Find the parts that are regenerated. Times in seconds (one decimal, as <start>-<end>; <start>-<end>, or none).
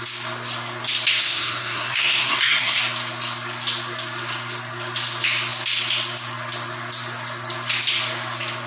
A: 1.2-2.8